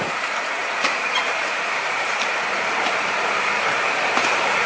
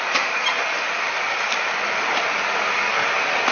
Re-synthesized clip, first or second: first